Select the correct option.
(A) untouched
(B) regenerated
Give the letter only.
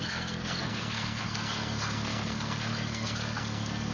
B